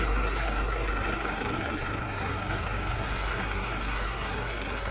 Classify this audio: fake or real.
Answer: fake